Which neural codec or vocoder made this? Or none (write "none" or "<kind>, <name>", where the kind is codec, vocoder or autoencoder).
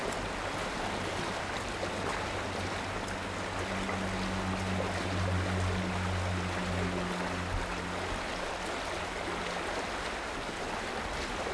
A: none